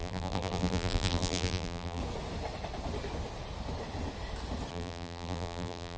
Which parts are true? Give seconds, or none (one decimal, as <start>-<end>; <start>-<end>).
2.0-4.7